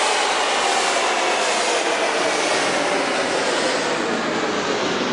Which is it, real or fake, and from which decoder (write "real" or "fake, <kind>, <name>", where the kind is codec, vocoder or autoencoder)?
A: real